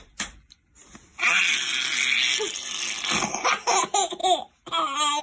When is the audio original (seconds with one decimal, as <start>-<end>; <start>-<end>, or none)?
0.0-5.2